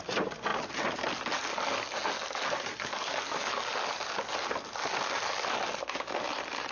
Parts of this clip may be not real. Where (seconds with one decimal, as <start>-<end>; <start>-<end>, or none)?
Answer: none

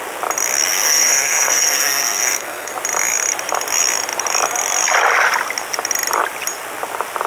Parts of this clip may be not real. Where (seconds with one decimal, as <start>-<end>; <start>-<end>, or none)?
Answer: 0.7-2.7

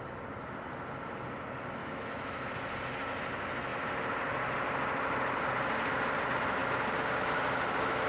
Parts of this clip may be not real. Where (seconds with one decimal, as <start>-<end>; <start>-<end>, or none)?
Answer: 1.8-2.5

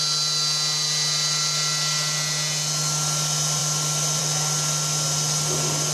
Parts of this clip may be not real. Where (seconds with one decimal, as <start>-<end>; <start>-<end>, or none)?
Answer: none

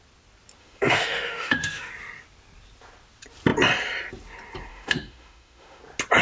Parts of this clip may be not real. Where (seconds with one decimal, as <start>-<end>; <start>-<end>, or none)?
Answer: 0.6-1.9; 4.7-5.8